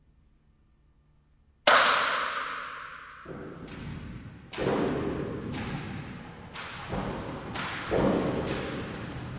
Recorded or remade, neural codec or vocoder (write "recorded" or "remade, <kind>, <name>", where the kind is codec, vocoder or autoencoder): recorded